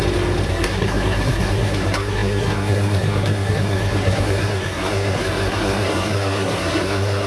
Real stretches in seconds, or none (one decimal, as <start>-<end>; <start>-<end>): 0.0-0.5